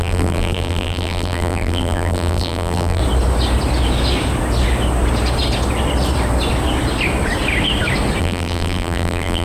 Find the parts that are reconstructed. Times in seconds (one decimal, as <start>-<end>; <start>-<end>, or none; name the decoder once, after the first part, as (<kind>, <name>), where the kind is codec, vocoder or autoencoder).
0.0-3.0 (vocoder, BigVGAN v2); 8.2-9.4